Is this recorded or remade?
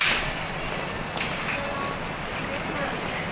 recorded